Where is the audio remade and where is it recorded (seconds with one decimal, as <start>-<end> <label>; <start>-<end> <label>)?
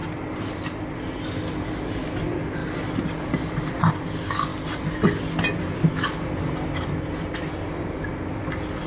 0.0-1.6 remade; 1.6-2.6 recorded; 2.6-3.9 remade; 3.9-8.9 recorded